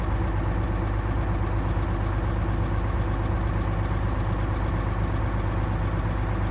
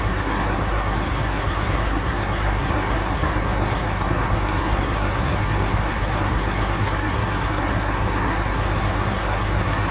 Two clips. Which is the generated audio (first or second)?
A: second